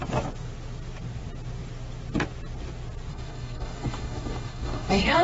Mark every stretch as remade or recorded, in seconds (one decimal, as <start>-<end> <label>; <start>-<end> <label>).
0.0-3.1 recorded; 3.1-5.2 remade